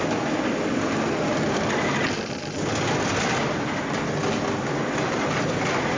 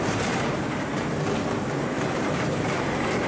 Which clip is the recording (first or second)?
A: first